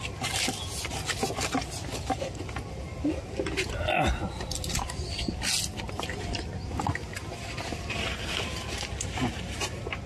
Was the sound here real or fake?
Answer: real